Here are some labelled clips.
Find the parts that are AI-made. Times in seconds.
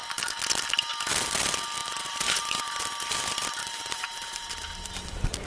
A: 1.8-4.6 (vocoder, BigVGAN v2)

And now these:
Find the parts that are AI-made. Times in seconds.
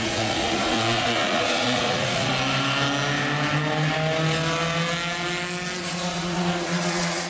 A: 0.0-2.3 (vocoder, Vocos); 5.8-7.3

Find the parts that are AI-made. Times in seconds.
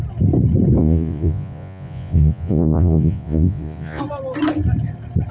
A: 0.8-4.0 (vocoder, Vocos)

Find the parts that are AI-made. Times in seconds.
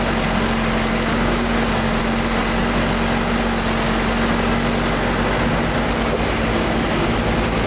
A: 1.1-2.0 (codec, DAC); 6.5-7.1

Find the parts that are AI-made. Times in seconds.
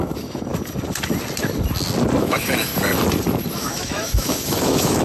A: 0.0-0.5 (autoencoder, DAC-VAE); 2.2-2.7; 3.5-5.0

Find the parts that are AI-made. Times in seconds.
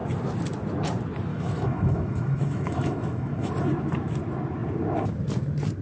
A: 1.3-3.5 (autoencoder, DAC-VAE)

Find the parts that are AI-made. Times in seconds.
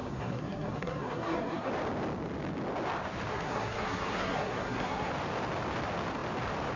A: 0.0-1.7 (codec, SNAC); 3.3-5.1